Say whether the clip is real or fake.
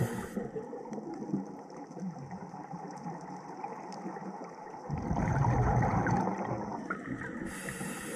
fake